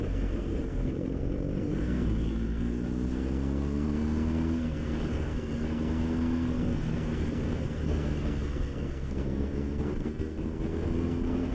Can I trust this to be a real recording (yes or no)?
no